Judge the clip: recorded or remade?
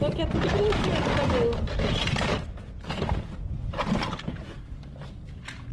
recorded